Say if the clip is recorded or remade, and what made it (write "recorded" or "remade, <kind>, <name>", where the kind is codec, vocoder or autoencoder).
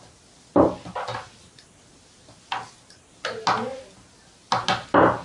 recorded